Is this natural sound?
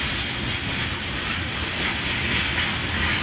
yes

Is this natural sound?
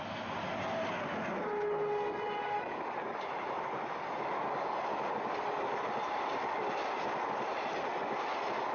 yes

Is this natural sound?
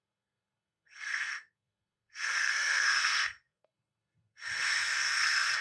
no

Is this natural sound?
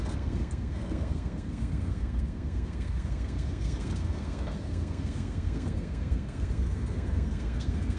no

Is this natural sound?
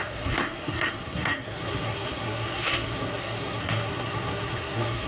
no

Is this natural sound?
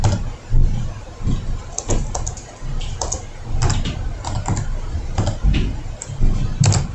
yes